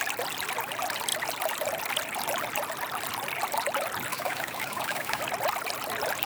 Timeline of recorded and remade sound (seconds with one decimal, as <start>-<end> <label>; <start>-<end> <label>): 0.0-4.1 recorded; 4.1-5.2 remade; 5.2-6.2 recorded